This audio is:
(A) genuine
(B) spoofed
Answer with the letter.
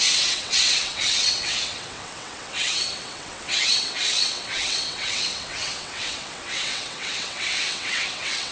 B